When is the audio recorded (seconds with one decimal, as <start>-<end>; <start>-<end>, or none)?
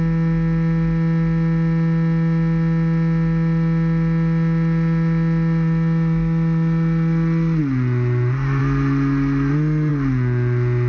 0.0-10.9